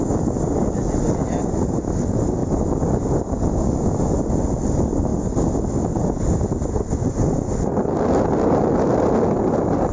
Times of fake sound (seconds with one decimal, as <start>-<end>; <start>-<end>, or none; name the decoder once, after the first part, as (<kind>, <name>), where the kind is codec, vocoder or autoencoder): none